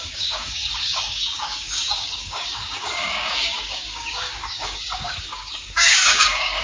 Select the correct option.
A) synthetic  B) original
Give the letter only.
A